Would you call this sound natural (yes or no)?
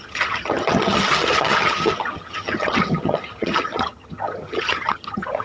no